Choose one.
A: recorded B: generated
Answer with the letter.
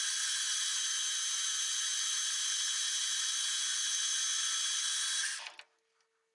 A